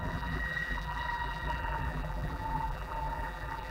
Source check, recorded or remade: remade